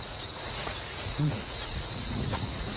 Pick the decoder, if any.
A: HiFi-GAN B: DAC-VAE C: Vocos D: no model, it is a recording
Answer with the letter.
C